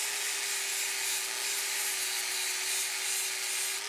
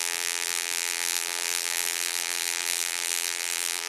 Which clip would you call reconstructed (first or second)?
second